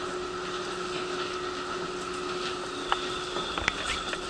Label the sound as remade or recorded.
recorded